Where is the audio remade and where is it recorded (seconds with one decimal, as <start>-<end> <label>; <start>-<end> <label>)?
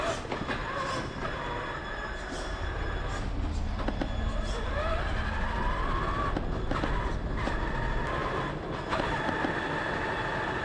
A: 0.0-10.6 recorded